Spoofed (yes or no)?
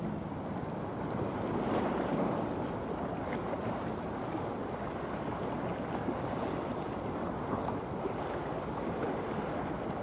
no